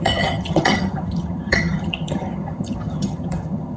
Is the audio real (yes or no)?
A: no